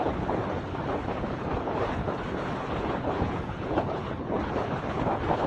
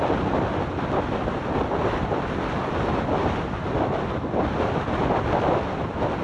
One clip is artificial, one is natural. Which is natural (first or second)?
second